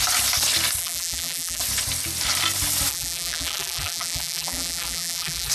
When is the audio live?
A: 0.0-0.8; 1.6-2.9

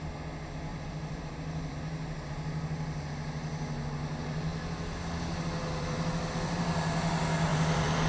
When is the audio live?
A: 0.0-0.7; 1.2-4.5; 6.6-7.5

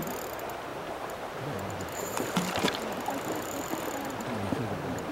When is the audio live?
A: 0.0-0.7; 3.8-5.1

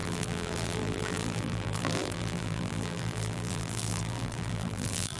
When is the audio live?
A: none